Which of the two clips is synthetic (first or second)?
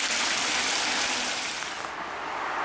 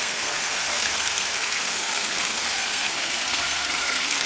second